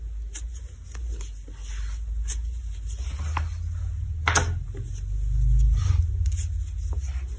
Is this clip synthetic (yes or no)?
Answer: no